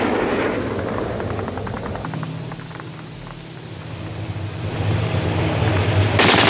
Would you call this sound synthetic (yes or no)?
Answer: no